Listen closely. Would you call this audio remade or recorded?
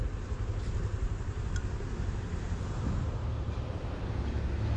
recorded